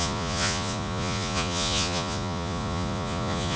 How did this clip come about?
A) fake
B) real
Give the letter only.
A